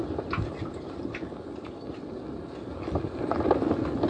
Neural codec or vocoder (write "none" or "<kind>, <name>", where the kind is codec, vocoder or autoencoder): none